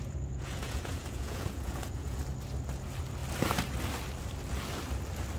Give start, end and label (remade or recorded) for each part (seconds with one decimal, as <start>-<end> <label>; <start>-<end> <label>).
0.0-2.2 remade; 2.2-5.4 recorded

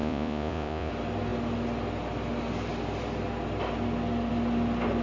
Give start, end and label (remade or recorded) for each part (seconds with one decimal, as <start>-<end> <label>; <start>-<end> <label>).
0.0-0.9 remade; 0.9-5.0 recorded

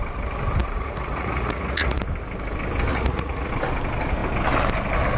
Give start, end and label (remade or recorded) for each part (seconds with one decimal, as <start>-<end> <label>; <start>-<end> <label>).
0.0-0.6 recorded; 0.6-2.0 remade; 2.0-2.9 recorded; 2.9-3.5 remade; 3.5-5.2 recorded

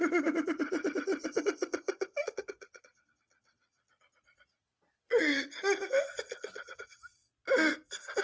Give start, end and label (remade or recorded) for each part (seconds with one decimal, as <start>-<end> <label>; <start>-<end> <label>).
0.0-1.2 recorded; 1.2-5.5 remade; 5.5-6.1 recorded; 6.1-6.8 remade; 6.8-8.2 recorded

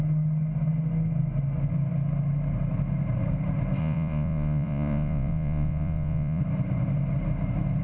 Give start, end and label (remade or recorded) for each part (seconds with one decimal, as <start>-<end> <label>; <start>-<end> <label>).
0.0-3.8 recorded; 3.8-6.4 remade; 6.4-7.8 recorded

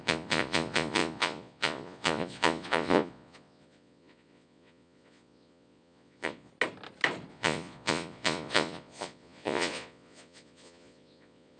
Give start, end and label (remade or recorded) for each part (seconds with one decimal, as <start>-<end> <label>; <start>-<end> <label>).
0.0-6.5 remade; 6.5-7.3 recorded; 7.3-11.6 remade

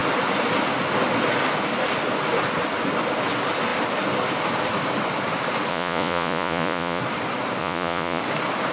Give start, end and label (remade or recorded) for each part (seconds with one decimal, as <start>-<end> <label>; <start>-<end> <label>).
0.0-5.7 recorded; 5.7-7.0 remade; 7.0-7.6 recorded; 7.6-8.2 remade; 8.2-8.7 recorded

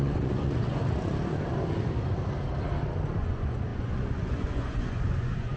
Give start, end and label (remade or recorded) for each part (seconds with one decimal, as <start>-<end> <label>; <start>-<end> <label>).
0.0-0.8 remade; 0.8-3.1 recorded; 3.1-5.6 remade